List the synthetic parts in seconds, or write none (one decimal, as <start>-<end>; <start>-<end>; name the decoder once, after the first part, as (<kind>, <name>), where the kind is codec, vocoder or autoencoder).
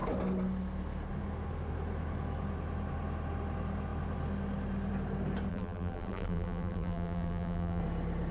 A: 5.5-7.8 (vocoder, BigVGAN v2)